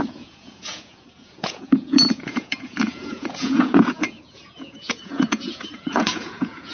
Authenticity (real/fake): fake